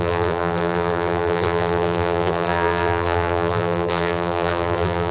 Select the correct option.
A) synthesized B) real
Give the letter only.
A